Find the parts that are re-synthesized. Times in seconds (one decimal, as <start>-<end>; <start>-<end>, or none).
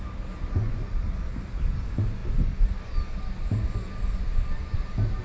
0.4-0.9